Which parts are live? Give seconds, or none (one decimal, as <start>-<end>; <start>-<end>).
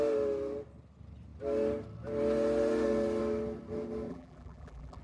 0.0-4.1